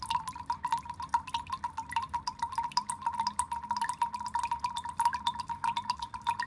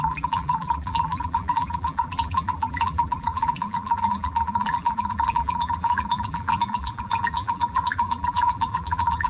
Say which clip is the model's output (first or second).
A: second